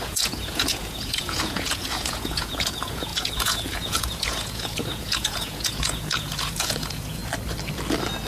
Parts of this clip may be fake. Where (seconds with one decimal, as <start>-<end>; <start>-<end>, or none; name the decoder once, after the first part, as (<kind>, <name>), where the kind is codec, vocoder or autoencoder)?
0.0-7.2 (vocoder, Vocos)